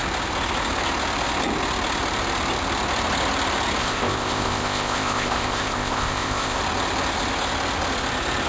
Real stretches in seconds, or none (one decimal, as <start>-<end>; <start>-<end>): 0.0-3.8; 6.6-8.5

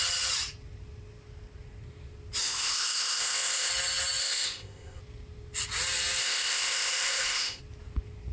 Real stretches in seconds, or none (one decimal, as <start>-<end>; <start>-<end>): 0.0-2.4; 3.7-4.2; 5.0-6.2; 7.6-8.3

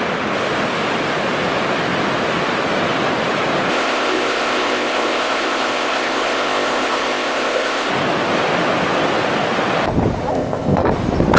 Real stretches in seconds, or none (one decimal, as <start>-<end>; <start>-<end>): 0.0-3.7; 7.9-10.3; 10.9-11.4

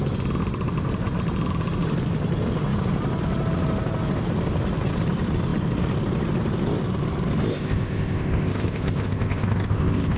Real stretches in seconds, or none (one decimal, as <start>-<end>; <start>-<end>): 0.0-7.5